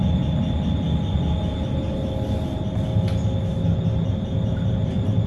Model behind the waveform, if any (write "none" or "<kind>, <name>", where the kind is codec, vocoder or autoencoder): none